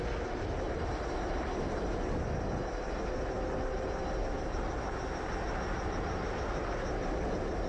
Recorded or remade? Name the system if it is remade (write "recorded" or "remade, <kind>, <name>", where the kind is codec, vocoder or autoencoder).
recorded